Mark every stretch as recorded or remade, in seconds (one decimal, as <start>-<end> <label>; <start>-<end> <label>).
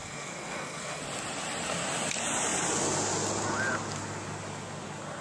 0.0-1.0 remade; 1.0-5.2 recorded